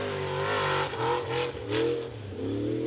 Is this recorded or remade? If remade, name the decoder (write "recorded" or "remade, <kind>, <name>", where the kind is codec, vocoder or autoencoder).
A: recorded